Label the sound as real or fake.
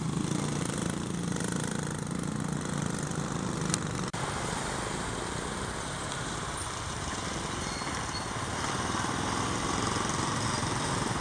real